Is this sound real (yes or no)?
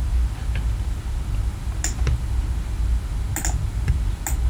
yes